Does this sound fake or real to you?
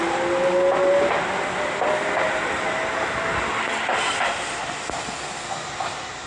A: real